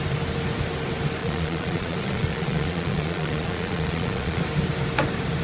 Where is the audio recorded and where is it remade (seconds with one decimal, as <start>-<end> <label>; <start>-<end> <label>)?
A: 0.0-1.2 recorded; 1.2-4.4 remade; 4.4-5.4 recorded